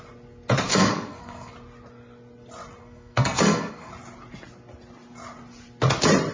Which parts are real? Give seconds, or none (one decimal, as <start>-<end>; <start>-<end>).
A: 0.0-0.7; 1.5-2.8; 3.9-6.3